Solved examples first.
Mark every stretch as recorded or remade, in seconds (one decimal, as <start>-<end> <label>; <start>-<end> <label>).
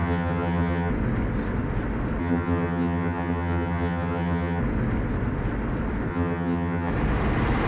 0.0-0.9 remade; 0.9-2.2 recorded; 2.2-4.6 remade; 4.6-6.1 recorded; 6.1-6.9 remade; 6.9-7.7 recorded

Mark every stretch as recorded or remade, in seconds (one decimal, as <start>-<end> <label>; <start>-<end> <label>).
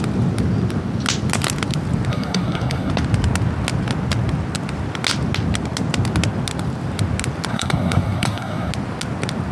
0.0-2.1 recorded; 2.1-2.9 remade; 2.9-7.5 recorded; 7.5-8.7 remade; 8.7-9.5 recorded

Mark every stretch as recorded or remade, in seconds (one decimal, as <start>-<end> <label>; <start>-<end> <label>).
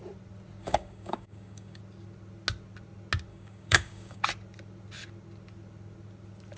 0.0-0.6 recorded; 0.6-1.8 remade; 1.8-3.3 recorded; 3.3-4.2 remade; 4.2-6.6 recorded